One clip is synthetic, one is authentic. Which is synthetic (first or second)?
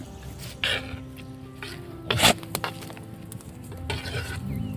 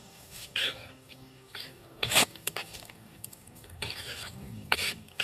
second